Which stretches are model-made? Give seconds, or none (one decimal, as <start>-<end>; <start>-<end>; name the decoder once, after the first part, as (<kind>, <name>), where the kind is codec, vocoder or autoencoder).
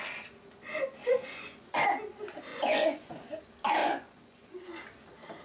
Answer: 1.0-1.8 (vocoder, Vocos); 2.5-3.2; 3.8-4.8